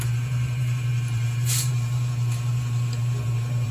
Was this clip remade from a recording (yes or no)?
yes